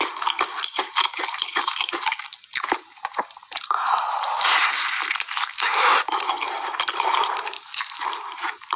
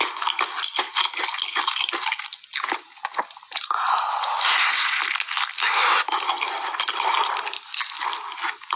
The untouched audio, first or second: second